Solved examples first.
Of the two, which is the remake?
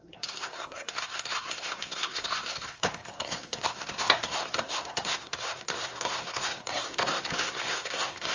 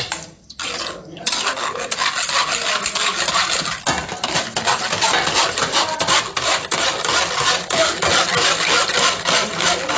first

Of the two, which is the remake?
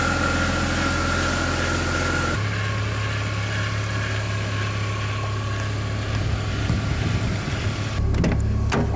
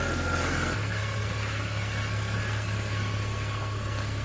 second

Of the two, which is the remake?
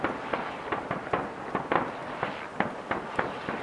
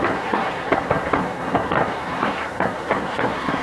second